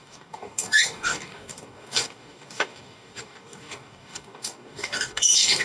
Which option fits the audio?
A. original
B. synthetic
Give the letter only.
B